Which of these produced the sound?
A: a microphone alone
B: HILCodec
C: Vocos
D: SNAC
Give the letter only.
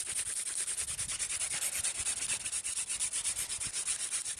A